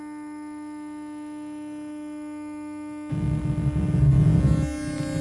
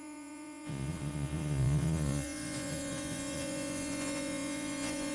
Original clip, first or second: first